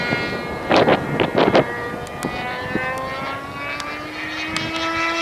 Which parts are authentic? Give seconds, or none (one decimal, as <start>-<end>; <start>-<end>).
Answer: 0.0-5.2